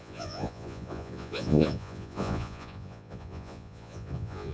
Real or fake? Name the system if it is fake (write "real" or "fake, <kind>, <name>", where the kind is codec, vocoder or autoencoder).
fake, vocoder, Vocos